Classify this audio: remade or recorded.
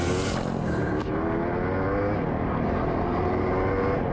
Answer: recorded